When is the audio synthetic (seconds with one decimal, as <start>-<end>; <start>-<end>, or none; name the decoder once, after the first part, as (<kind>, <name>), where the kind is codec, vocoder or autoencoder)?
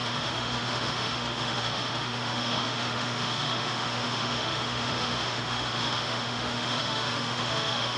0.0-8.0 (autoencoder, DAC-VAE)